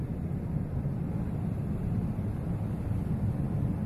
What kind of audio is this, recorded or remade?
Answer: recorded